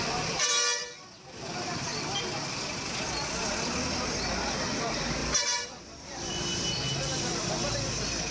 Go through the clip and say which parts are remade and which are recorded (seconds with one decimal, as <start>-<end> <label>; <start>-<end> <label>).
0.0-0.8 recorded; 0.8-3.3 remade; 3.3-5.2 recorded; 5.2-6.4 remade; 6.4-8.3 recorded